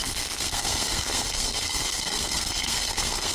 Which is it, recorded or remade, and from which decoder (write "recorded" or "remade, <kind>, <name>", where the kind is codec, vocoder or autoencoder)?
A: remade, codec, SNAC